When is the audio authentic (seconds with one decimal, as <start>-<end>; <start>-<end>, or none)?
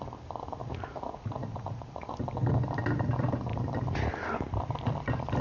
0.0-0.6; 2.1-5.4